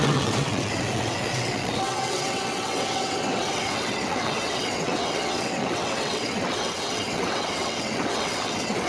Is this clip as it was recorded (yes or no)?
no